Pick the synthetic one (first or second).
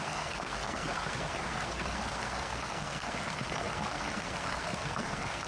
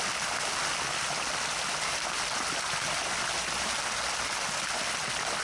first